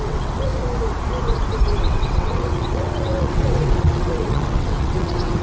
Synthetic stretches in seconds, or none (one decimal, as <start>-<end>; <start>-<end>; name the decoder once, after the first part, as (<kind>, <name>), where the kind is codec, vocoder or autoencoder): 0.0-0.5 (vocoder, WaveNeXt); 1.8-5.4